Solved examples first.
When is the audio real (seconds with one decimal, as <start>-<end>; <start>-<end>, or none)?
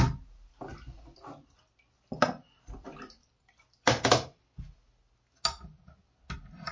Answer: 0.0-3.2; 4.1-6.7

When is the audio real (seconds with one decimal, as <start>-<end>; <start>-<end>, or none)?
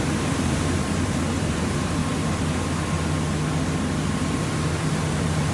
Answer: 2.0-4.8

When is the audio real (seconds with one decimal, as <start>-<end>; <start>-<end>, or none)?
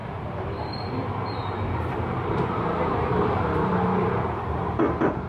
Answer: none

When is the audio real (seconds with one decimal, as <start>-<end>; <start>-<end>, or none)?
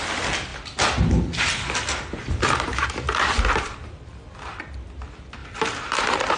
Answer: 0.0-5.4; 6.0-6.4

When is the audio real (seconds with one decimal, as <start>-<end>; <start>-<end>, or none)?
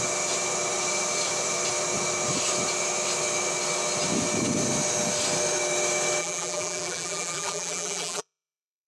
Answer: 0.0-6.2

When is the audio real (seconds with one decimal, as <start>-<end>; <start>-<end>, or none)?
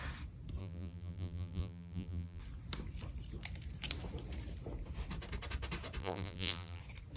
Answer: 0.0-0.6; 2.4-6.0; 6.8-7.2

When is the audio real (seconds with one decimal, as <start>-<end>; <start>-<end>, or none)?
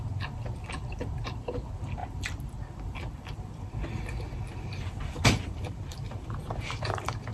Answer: none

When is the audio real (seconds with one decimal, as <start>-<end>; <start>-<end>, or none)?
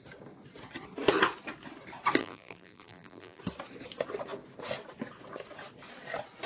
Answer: 0.0-2.2; 3.4-6.5